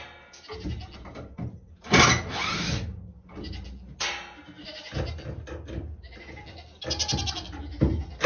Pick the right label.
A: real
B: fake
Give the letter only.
A